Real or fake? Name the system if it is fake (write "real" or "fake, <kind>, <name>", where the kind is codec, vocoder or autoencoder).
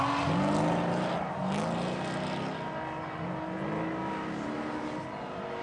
real